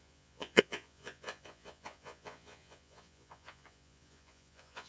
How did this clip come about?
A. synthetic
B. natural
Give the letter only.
A